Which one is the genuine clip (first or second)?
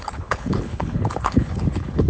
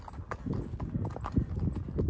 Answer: second